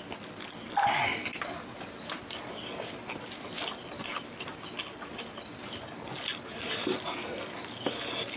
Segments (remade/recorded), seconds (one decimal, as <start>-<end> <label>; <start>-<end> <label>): 0.0-1.1 recorded; 1.1-3.1 remade; 3.1-8.4 recorded